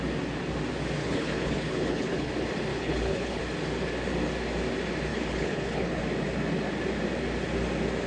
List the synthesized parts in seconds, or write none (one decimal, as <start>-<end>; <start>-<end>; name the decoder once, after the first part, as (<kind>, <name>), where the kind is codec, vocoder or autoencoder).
1.0-2.3 (codec, HILCodec); 2.7-3.4; 5.1-6.0